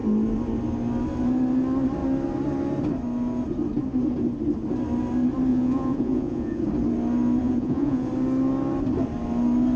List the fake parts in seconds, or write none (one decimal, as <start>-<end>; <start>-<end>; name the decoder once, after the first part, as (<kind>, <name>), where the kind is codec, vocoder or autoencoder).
5.5-6.6 (vocoder, Vocos); 7.4-8.1